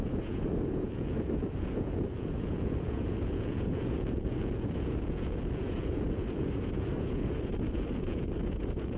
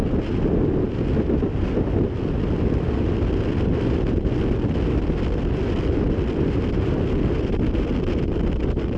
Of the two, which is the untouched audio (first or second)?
second